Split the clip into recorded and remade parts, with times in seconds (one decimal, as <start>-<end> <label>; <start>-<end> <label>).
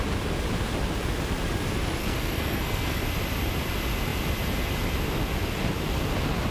0.0-2.0 recorded; 2.0-3.0 remade; 3.0-6.5 recorded